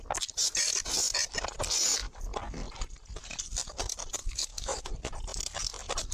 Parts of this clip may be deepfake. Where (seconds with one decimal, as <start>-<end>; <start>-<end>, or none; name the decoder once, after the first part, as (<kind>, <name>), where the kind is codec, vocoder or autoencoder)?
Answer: 4.2-4.9 (autoencoder, DAC-VAE)